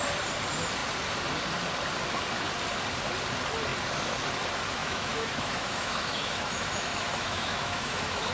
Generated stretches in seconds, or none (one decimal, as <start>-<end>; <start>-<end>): 4.8-8.3